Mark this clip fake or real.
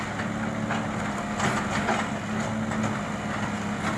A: real